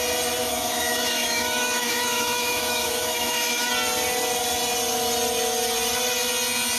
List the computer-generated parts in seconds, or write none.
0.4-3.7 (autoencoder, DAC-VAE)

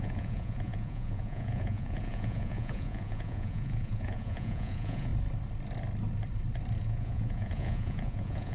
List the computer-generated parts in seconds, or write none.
0.0-5.1 (vocoder, Vocos); 6.8-8.5